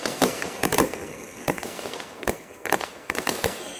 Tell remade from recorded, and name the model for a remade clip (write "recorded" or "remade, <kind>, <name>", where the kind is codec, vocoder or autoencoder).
remade, codec, SNAC